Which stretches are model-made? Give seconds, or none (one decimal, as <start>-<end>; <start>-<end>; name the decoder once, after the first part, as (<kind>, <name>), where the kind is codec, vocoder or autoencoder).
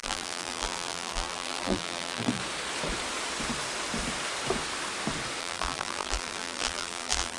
0.0-2.4 (vocoder, BigVGAN v2); 5.4-7.4